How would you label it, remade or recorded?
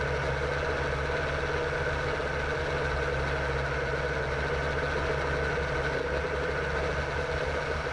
recorded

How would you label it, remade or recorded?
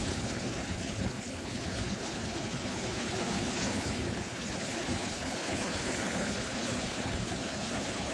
remade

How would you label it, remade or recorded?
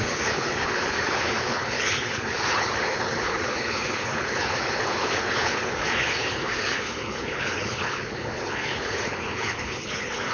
remade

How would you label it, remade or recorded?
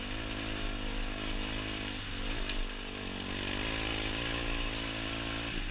recorded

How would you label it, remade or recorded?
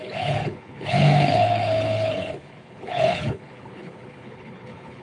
remade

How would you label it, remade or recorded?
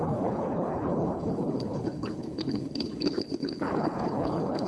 remade